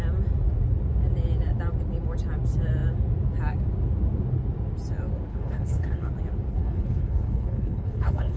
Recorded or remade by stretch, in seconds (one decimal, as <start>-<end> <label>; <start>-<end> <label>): 0.0-5.3 recorded; 5.3-6.1 remade; 6.1-6.5 recorded; 6.5-8.4 remade